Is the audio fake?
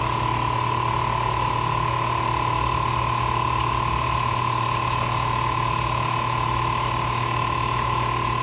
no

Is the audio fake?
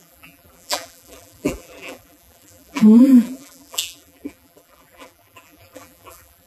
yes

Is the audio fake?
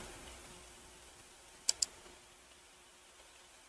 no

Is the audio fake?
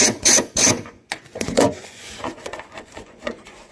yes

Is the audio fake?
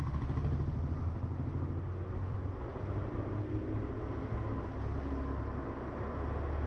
no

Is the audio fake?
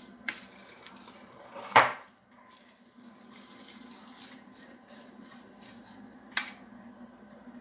yes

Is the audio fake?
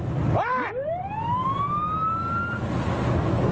no